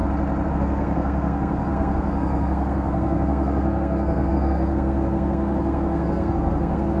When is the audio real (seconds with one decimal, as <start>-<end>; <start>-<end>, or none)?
0.0-0.5